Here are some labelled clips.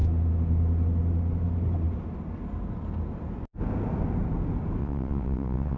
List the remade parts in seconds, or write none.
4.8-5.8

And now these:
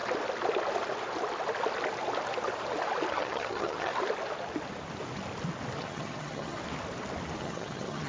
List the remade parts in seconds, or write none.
3.1-3.9; 5.8-6.6; 7.4-8.1

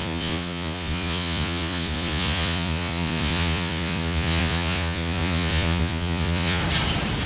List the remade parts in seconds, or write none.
0.0-6.6

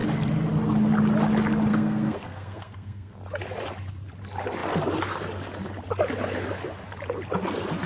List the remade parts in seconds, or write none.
1.7-3.2

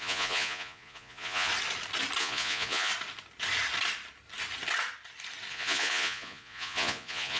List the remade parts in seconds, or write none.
0.0-1.5; 2.2-2.9; 5.5-7.4

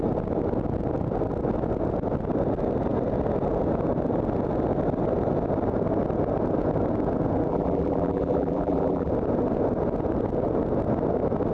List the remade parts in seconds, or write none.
7.5-9.1